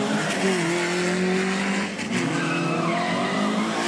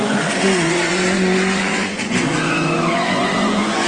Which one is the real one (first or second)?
first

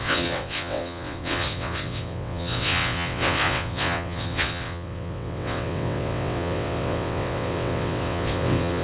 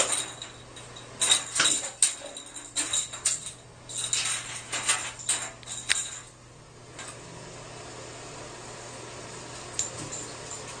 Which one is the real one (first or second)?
second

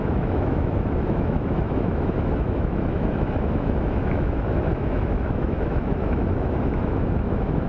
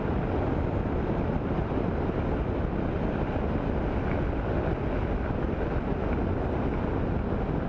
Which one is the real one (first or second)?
second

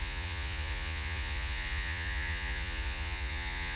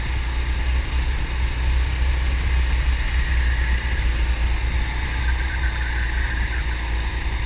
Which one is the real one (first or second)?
second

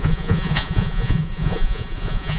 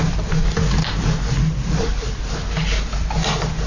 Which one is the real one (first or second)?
second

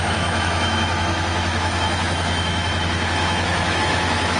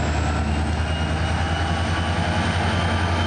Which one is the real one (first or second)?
second